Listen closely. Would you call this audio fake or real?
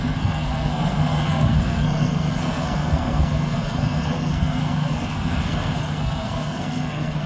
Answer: fake